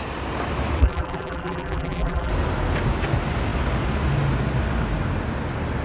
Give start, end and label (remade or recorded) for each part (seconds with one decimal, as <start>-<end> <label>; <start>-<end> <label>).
0.0-0.8 recorded; 0.8-2.3 remade; 2.3-5.8 recorded